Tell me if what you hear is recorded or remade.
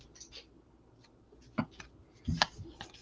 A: recorded